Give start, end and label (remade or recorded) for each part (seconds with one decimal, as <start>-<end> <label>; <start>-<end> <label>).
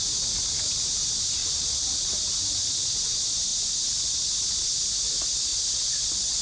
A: 0.0-1.4 recorded; 1.4-2.0 remade; 2.0-6.4 recorded